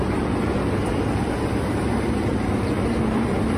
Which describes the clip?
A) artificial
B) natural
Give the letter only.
A